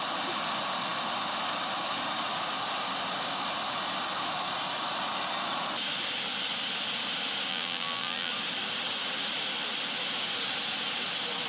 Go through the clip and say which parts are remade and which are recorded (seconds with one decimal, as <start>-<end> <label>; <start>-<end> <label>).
0.0-7.5 recorded; 7.5-8.3 remade; 8.3-11.5 recorded